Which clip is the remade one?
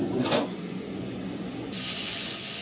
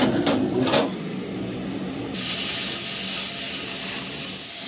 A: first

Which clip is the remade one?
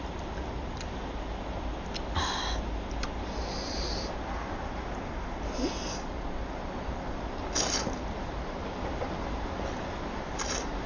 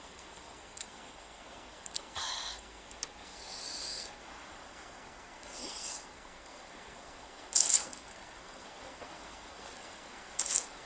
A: second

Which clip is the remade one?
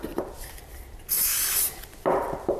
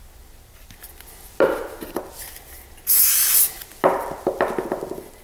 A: first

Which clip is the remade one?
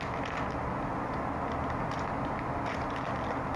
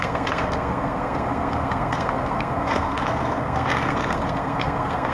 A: second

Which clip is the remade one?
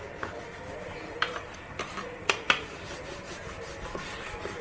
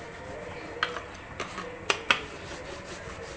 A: first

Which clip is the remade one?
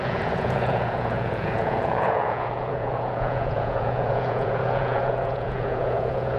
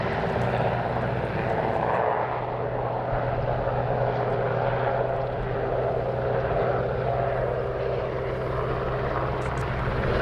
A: first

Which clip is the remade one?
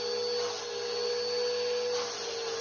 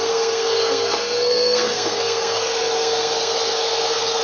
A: second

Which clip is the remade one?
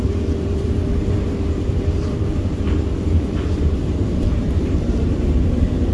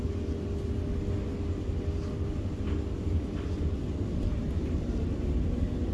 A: first